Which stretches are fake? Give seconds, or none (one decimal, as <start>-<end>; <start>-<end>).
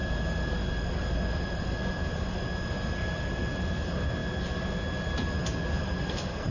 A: 5.8-6.5